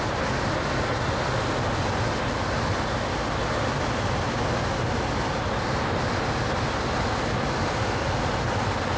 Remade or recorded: recorded